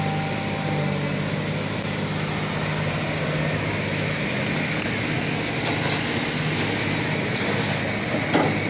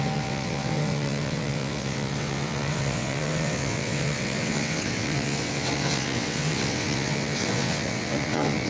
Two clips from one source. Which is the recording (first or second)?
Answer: first